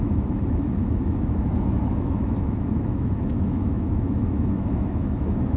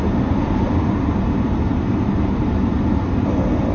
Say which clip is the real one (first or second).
second